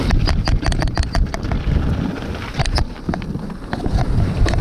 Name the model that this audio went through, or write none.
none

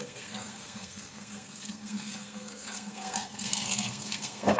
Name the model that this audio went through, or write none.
codec, SNAC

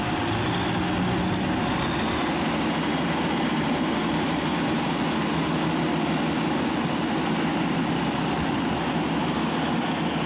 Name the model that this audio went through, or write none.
none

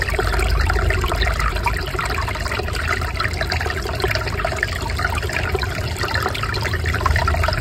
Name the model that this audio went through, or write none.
vocoder, BigVGAN v2